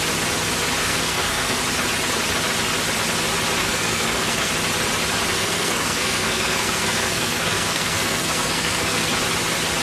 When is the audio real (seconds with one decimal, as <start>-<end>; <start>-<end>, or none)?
0.0-0.8; 1.6-3.6; 4.5-5.3; 9.1-9.8